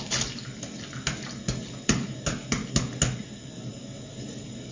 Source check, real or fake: real